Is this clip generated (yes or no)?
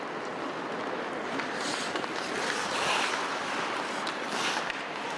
no